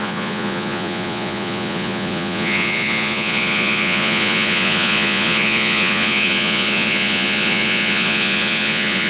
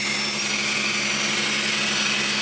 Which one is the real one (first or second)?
second